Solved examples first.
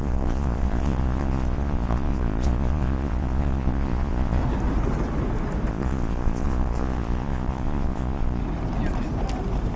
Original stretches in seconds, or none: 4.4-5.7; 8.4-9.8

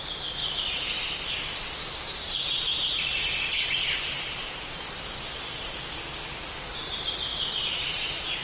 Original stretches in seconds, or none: 0.0-0.4; 3.2-3.8; 5.8-7.3

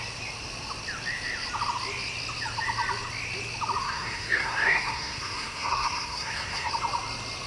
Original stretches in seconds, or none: 0.0-3.8; 6.7-7.5

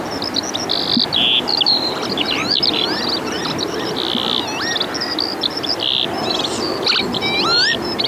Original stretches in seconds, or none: 0.0-8.1

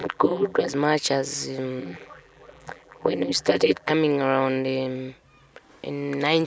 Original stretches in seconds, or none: 0.7-1.8; 3.9-6.5

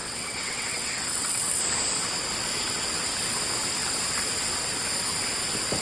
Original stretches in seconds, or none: 1.6-5.8

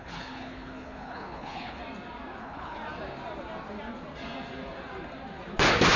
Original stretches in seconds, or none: 1.8-2.4; 2.8-6.0